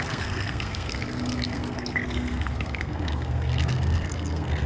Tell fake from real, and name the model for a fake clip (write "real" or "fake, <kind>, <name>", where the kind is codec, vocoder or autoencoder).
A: fake, codec, SNAC